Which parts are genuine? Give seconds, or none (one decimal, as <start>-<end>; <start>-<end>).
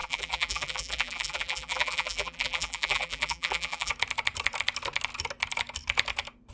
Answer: 3.9-6.5